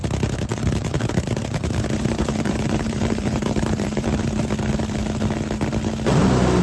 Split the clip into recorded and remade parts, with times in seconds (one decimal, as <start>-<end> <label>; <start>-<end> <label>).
0.0-0.5 recorded; 0.5-4.5 remade; 4.5-6.6 recorded